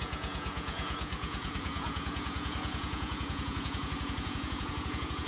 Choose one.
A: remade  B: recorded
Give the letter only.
A